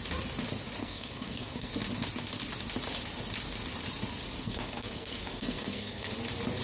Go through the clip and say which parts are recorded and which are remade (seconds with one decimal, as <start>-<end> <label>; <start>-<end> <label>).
0.0-0.8 recorded; 0.8-1.7 remade; 1.7-4.4 recorded; 4.4-6.1 remade; 6.1-6.6 recorded

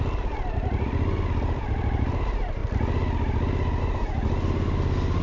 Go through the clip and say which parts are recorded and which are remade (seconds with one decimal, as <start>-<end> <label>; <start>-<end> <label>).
0.0-2.6 remade; 2.6-3.8 recorded; 3.8-5.2 remade

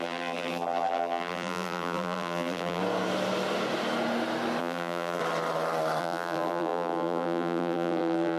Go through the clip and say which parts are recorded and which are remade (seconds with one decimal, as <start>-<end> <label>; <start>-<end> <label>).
0.0-2.8 remade; 2.8-4.6 recorded; 4.6-5.2 remade; 5.2-6.0 recorded; 6.0-8.4 remade

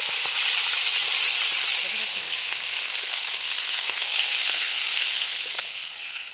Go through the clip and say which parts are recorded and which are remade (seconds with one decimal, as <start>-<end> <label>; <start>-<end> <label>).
0.0-2.1 recorded; 2.1-6.3 remade

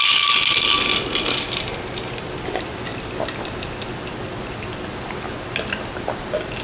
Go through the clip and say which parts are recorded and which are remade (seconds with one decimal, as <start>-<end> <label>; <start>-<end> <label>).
0.0-6.6 recorded

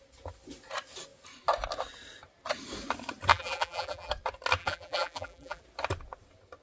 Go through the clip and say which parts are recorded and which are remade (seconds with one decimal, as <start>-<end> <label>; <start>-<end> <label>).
0.0-3.3 recorded; 3.3-4.1 remade; 4.1-4.6 recorded; 4.6-5.6 remade; 5.6-6.6 recorded

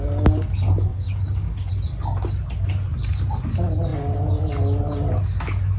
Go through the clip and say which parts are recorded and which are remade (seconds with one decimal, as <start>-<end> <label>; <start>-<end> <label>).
0.0-0.9 recorded; 0.9-1.7 remade; 1.7-5.8 recorded

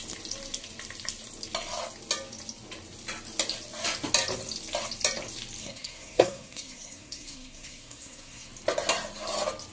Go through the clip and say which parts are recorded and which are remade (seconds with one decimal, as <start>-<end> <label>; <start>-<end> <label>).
0.0-5.6 recorded; 5.6-8.5 remade; 8.5-9.7 recorded